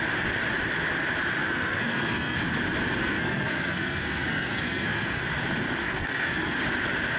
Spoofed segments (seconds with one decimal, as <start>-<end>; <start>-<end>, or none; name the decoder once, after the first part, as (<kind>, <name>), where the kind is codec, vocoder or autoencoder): 1.4-2.4 (codec, SNAC); 3.0-5.2; 5.8-6.6